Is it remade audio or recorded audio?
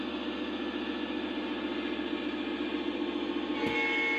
recorded